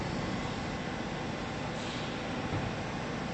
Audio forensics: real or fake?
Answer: real